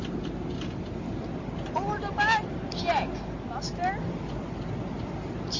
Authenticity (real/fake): real